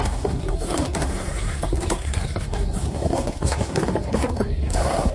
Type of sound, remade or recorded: remade